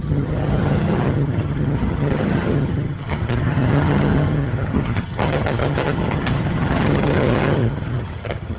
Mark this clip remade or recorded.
remade